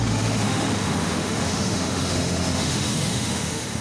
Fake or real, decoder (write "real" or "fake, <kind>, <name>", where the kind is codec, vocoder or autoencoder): fake, autoencoder, DAC-VAE